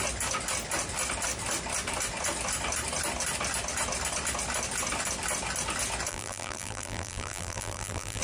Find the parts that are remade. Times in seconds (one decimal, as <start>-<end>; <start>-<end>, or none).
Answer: 6.1-8.2